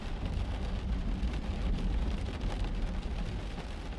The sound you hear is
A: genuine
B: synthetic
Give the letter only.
A